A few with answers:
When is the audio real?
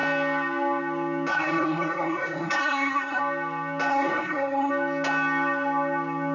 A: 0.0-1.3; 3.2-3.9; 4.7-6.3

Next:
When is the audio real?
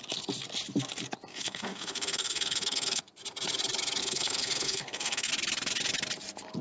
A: 0.0-1.3; 3.0-4.0; 5.3-6.6